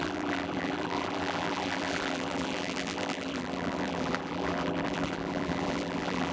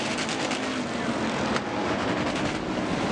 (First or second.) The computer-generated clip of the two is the first